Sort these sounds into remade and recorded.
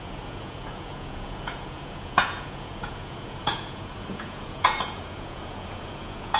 remade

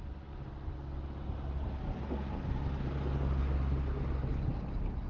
recorded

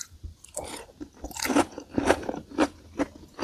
recorded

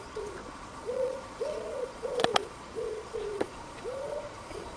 remade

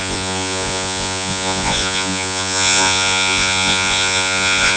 remade